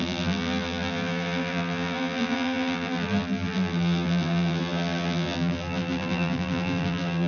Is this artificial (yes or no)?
yes